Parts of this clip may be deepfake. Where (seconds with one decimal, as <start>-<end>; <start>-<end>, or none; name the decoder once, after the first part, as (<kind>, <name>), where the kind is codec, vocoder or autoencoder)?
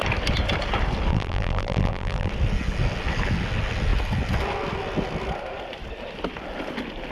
1.1-2.3 (vocoder, BigVGAN v2)